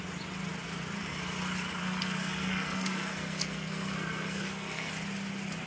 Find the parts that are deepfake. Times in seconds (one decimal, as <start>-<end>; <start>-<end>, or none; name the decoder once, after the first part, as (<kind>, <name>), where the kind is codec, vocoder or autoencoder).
1.8-4.9 (codec, SNAC)

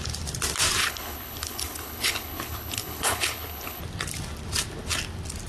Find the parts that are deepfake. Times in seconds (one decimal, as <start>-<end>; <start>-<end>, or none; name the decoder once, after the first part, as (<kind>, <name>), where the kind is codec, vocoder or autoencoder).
0.8-3.8 (codec, HILCodec)

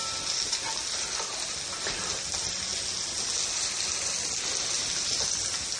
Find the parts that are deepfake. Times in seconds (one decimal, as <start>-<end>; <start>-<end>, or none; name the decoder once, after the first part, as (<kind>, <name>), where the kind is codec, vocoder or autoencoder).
none

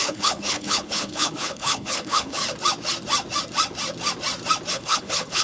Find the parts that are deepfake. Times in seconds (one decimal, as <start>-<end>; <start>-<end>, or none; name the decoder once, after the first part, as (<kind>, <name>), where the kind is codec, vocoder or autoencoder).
0.0-2.4 (codec, HILCodec); 4.7-5.4

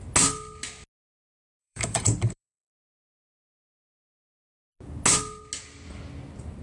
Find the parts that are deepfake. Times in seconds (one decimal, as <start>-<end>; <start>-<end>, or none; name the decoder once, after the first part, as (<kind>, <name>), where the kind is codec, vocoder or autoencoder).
1.6-2.7 (vocoder, BigVGAN v2)

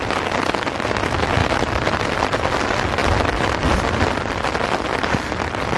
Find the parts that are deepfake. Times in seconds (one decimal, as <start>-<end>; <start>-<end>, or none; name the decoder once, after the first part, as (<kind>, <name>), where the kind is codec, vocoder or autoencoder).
none